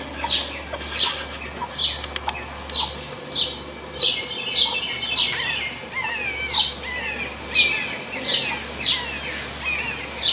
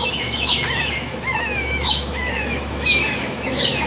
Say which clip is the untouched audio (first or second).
first